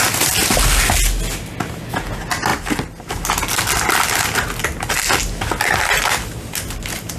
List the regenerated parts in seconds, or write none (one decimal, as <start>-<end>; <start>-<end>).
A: none